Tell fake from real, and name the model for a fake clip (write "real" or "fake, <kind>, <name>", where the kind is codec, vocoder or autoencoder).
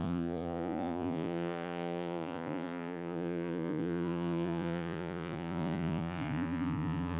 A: fake, vocoder, Vocos